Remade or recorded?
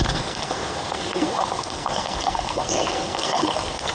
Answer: remade